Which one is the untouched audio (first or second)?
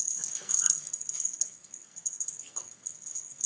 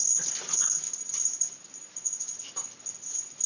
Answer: second